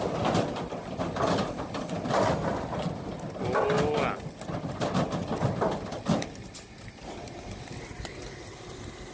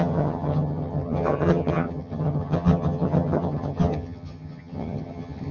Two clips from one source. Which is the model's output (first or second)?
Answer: second